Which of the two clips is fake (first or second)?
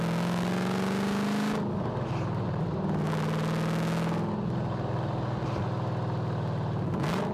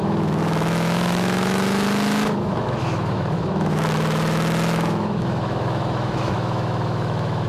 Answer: second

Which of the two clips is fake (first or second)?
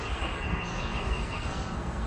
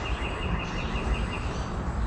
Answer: first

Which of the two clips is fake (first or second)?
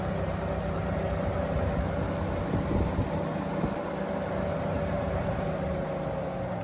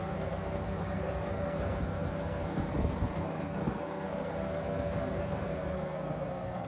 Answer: second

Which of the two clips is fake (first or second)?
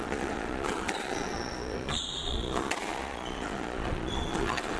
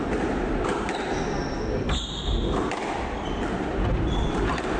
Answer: first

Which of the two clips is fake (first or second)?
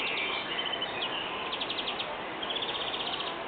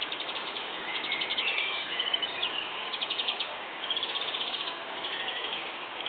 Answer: second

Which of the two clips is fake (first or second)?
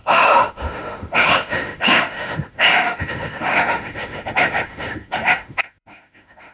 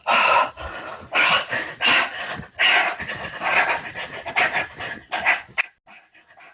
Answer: first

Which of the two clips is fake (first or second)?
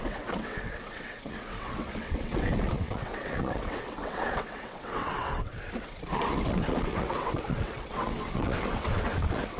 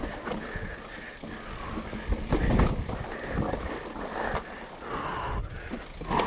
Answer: first